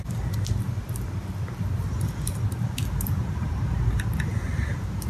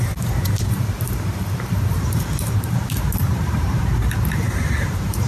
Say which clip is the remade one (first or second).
second